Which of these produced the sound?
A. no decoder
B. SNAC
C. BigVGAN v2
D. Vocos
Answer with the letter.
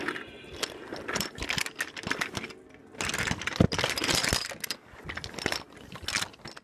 A